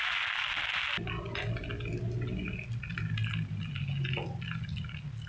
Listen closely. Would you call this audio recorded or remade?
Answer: recorded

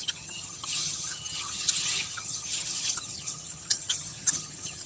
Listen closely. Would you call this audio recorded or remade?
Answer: remade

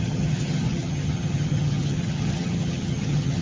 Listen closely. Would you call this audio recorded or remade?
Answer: remade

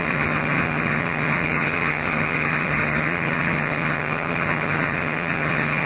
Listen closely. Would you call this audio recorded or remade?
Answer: remade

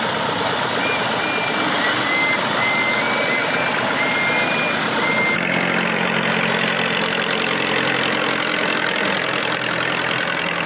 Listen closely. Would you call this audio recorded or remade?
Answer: recorded